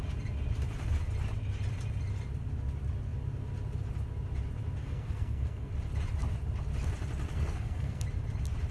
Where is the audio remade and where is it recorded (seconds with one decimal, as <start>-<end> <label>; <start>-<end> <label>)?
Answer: 0.0-4.8 recorded; 4.8-5.7 remade; 5.7-7.3 recorded; 7.3-8.0 remade; 8.0-8.7 recorded